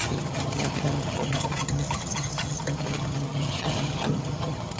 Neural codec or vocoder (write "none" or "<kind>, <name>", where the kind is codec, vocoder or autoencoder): vocoder, HiFi-GAN